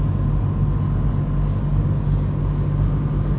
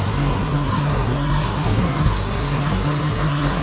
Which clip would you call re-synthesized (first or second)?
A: second